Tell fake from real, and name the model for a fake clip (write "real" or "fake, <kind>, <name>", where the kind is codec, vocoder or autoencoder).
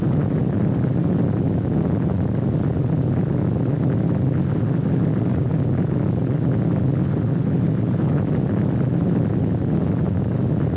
real